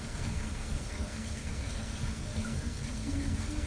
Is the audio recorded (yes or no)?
no